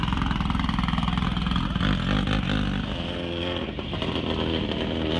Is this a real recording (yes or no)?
yes